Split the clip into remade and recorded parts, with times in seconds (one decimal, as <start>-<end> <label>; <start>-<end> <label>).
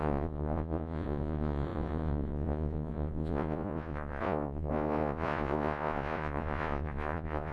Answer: 0.0-7.5 remade